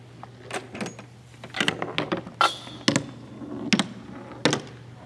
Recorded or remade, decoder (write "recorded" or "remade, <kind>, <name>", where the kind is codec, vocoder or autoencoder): recorded